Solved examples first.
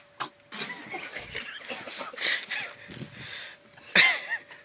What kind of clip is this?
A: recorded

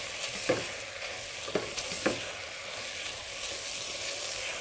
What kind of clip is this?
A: recorded